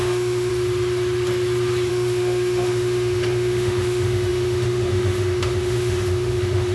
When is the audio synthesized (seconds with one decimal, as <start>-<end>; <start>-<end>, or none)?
0.0-0.5; 1.9-6.7